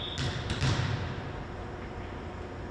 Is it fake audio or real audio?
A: real